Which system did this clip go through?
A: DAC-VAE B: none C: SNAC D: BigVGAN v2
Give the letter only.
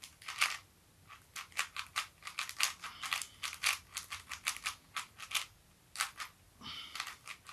B